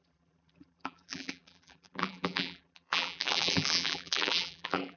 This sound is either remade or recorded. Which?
remade